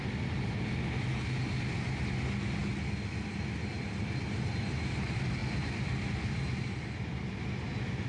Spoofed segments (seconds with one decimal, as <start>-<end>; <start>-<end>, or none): none